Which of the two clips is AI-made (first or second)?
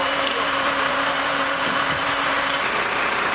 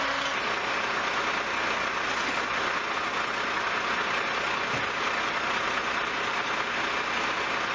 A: first